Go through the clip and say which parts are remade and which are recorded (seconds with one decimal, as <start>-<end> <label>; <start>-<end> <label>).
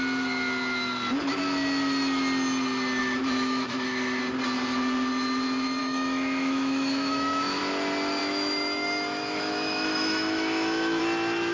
0.0-3.0 recorded; 3.0-4.2 remade; 4.2-5.8 recorded; 5.8-7.6 remade; 7.6-8.2 recorded; 8.2-11.0 remade; 11.0-11.5 recorded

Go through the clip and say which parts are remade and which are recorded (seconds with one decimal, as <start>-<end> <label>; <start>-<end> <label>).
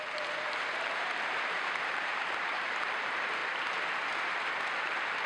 0.0-3.4 remade; 3.4-4.5 recorded; 4.5-5.3 remade